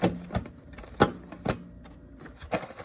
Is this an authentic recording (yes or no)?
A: yes